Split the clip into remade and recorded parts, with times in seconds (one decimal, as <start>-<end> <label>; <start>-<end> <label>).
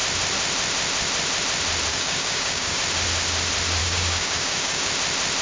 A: 0.0-1.9 recorded; 1.9-2.8 remade; 2.8-3.8 recorded; 3.8-4.9 remade; 4.9-5.4 recorded